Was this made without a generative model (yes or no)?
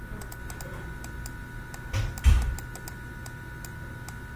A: yes